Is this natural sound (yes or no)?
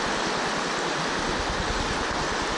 yes